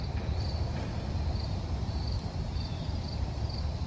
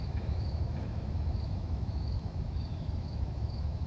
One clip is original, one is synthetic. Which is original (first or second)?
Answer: first